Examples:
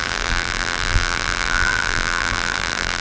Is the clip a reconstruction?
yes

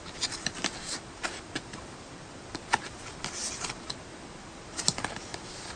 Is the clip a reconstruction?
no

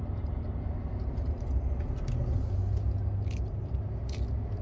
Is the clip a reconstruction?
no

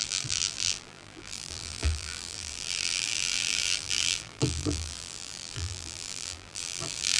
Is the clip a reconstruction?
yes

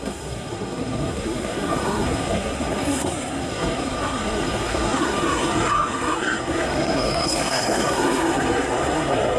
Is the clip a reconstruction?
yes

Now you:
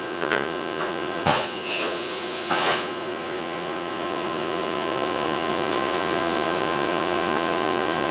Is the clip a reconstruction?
yes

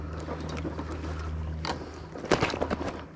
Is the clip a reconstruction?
no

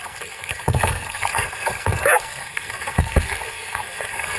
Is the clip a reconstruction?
yes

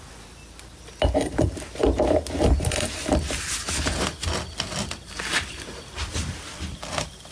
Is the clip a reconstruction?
yes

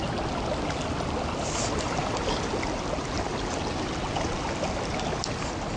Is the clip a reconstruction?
no